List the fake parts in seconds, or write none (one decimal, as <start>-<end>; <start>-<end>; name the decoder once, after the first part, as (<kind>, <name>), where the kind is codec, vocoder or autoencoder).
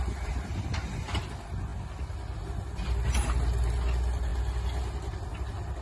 none